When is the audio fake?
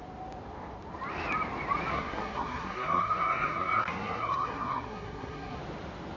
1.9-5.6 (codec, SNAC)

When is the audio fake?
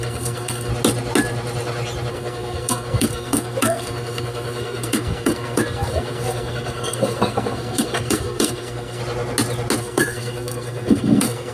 0.0-0.7 (codec, SNAC); 2.1-9.0; 9.8-11.5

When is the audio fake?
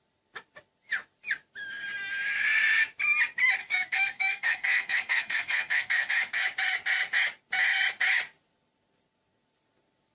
3.6-6.1 (codec, SNAC)